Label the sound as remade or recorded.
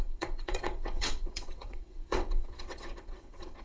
remade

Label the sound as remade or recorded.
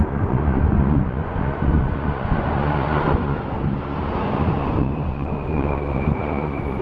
remade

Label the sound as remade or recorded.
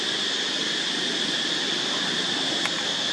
recorded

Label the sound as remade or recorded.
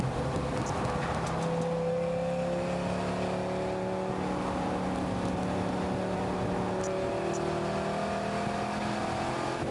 recorded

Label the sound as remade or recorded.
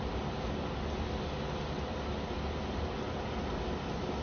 recorded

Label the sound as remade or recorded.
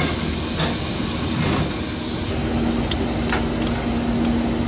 recorded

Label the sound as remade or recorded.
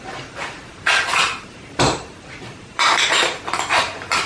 remade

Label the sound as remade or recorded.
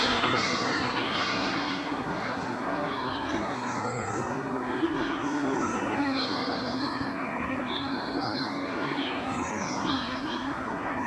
remade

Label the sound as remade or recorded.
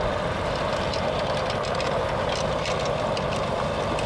recorded